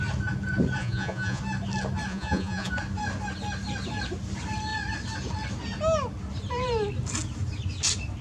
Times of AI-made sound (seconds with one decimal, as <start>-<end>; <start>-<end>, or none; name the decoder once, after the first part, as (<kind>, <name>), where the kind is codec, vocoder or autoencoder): 0.8-1.4 (vocoder, Vocos); 2.1-2.7